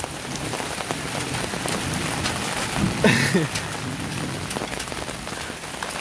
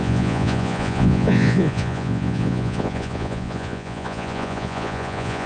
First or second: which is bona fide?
first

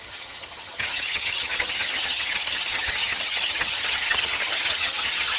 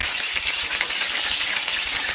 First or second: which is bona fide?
second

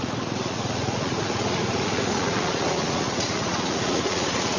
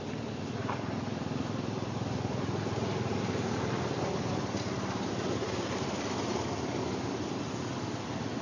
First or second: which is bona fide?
second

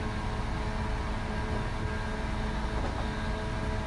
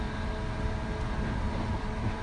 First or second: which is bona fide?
first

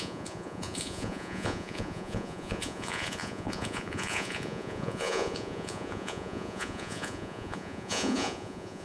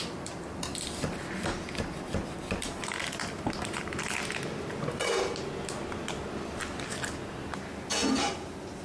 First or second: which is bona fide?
second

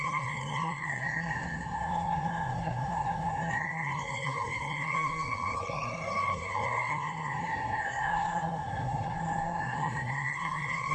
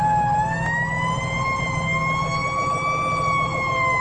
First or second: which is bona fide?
second